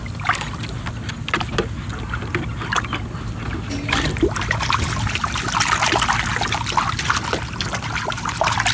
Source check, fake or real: real